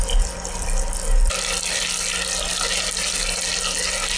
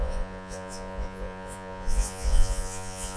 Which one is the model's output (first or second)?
second